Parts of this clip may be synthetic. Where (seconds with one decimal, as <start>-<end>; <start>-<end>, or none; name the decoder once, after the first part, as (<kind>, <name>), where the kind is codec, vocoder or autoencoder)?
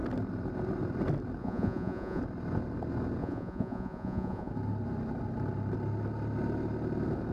1.4-2.2 (vocoder, Vocos); 3.2-4.5